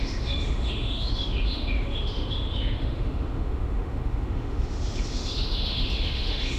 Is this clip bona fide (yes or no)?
no